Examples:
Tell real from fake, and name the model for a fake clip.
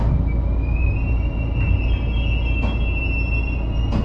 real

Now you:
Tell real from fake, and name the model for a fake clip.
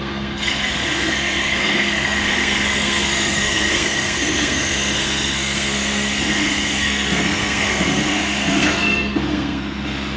fake, codec, SNAC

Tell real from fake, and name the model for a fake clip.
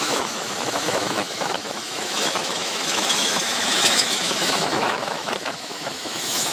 fake, autoencoder, DAC-VAE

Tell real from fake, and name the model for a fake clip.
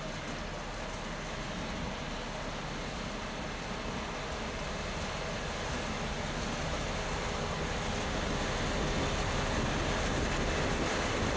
real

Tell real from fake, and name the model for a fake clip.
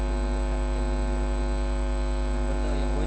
real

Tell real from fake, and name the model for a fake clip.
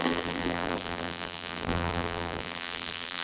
fake, vocoder, BigVGAN v2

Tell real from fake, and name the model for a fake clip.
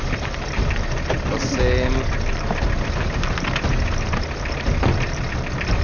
real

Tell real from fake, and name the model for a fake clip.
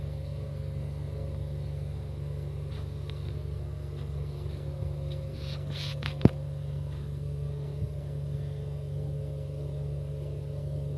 fake, codec, SNAC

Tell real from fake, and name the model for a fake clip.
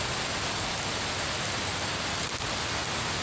real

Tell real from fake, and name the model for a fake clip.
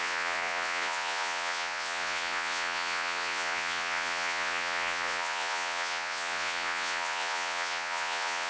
fake, vocoder, Vocos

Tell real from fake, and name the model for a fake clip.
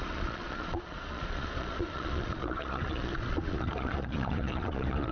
fake, vocoder, Vocos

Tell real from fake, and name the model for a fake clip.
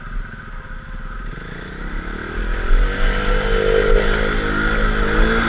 real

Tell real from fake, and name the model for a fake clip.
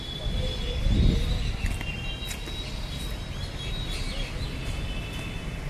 real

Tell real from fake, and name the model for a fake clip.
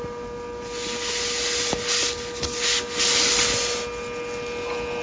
real